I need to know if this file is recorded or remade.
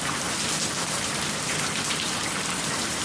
recorded